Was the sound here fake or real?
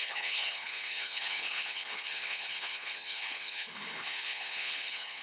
fake